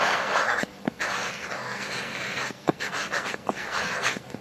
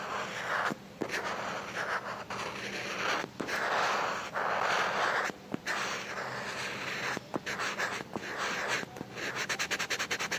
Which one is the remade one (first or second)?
first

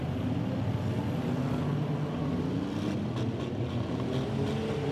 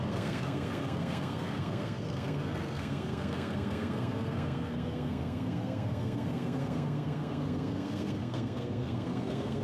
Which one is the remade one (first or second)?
second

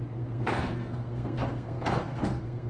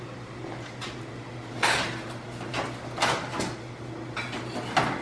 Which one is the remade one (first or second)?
first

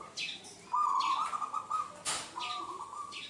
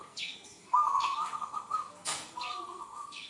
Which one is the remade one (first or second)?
second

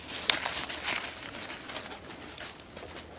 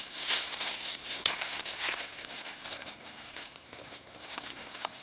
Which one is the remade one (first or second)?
second